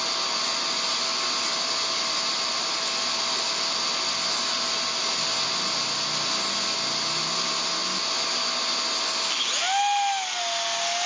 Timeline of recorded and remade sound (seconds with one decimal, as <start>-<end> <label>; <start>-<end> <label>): 0.0-11.1 recorded